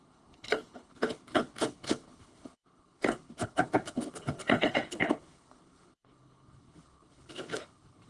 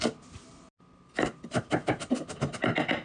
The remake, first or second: first